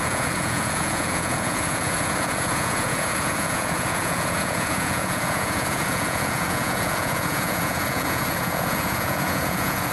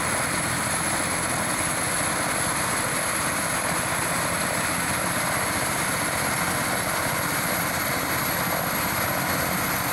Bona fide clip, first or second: second